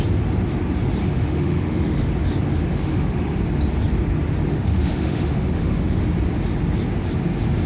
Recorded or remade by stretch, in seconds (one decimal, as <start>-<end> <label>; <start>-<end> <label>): 0.0-1.0 recorded; 1.0-2.1 remade; 2.1-2.7 recorded; 2.7-3.4 remade; 3.4-4.5 recorded; 4.5-6.0 remade; 6.0-7.7 recorded

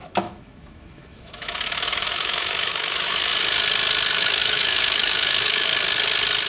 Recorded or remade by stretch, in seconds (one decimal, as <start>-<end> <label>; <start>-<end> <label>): 0.0-3.3 remade; 3.3-4.1 recorded; 4.1-5.7 remade; 5.7-6.5 recorded